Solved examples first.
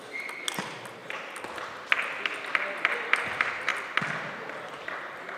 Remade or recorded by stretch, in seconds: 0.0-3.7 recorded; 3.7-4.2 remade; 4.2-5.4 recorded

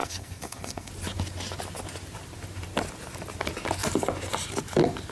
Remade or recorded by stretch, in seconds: 0.0-0.9 remade; 0.9-5.1 recorded

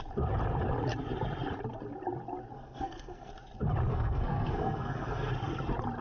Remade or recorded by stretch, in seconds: 0.0-2.5 recorded; 2.5-3.3 remade; 3.3-3.9 recorded; 3.9-5.3 remade; 5.3-6.0 recorded

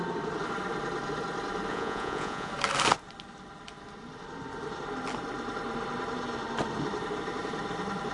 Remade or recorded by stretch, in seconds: 0.0-1.7 recorded; 1.7-2.5 remade; 2.5-8.1 recorded

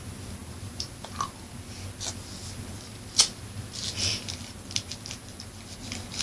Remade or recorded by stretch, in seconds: 0.0-6.2 recorded

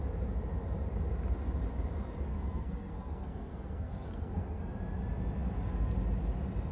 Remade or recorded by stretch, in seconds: 0.0-2.3 recorded; 2.3-4.6 remade; 4.6-6.7 recorded